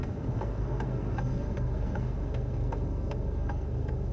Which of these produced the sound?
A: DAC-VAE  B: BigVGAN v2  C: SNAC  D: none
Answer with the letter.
C